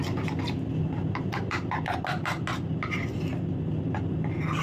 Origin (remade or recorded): recorded